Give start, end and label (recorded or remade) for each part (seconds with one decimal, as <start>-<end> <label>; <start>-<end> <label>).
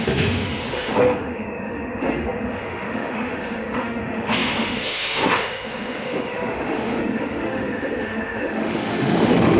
0.0-9.6 remade